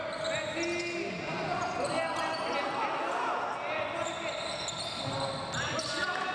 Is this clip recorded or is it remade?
recorded